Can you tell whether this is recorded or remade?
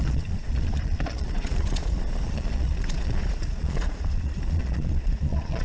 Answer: remade